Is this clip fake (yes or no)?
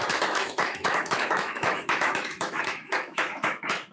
yes